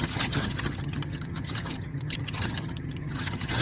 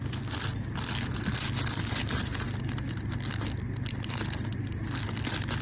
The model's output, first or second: first